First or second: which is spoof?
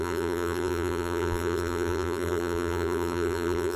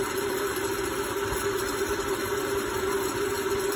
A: first